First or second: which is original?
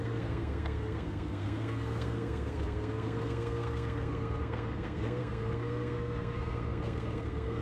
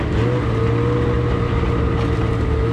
second